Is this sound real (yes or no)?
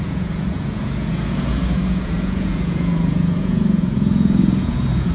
no